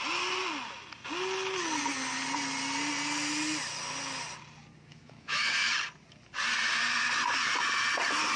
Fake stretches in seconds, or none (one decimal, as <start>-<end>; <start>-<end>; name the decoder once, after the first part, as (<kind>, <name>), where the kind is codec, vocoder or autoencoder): 4.9-5.7 (autoencoder, DAC-VAE)